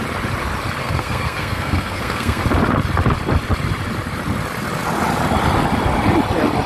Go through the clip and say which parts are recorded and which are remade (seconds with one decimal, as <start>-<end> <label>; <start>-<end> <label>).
0.0-0.8 recorded; 0.8-2.4 remade; 2.4-6.7 recorded